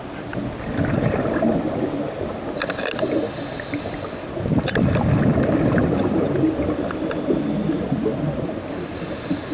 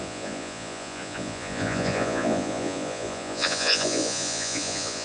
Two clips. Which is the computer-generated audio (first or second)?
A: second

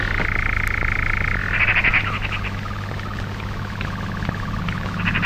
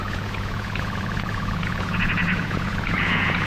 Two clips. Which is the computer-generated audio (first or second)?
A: second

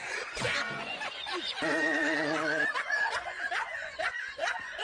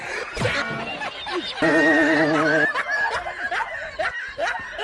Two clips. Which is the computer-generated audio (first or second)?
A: first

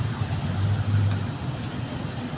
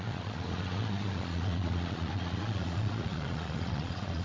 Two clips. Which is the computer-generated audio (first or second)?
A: second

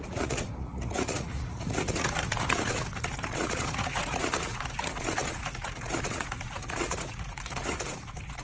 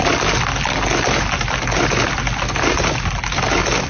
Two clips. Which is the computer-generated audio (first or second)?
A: first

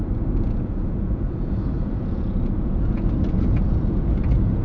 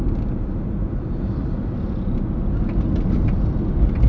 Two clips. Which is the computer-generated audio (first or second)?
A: first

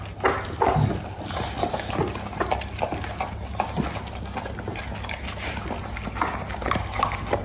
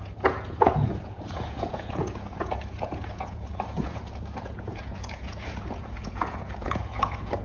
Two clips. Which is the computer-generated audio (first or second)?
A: second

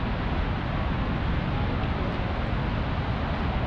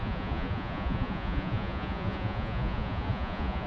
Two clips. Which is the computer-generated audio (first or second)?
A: second